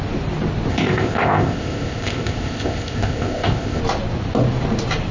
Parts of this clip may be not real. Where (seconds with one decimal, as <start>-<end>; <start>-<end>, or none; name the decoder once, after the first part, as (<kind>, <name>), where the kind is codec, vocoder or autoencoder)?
0.7-3.8 (codec, ZipCodec)